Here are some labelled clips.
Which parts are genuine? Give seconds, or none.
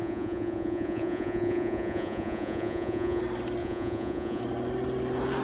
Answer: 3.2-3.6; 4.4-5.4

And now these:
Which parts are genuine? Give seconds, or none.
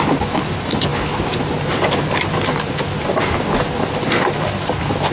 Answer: 0.0-5.1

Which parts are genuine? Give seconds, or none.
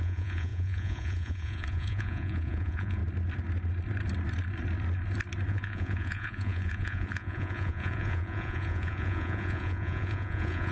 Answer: 3.0-5.5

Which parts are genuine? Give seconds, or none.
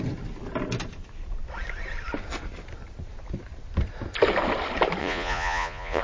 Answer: 0.0-5.0